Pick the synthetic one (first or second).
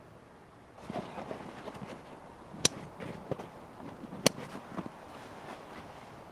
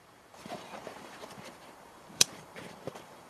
second